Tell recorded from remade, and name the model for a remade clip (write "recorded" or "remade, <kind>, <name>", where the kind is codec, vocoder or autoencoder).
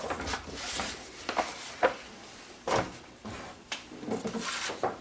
recorded